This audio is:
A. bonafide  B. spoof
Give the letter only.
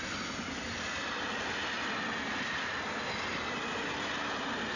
A